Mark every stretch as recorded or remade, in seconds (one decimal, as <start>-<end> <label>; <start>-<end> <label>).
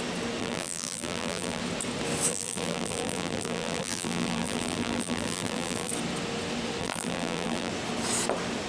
0.0-0.4 recorded; 0.4-1.6 remade; 1.6-2.3 recorded; 2.3-5.9 remade; 5.9-6.8 recorded; 6.8-7.7 remade; 7.7-8.7 recorded